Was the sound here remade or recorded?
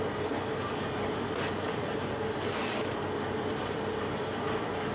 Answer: recorded